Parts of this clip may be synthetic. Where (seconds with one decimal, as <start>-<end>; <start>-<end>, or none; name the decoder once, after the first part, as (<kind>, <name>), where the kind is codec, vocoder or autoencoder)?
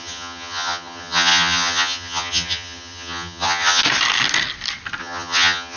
0.0-3.8 (vocoder, HiFi-GAN); 5.0-5.8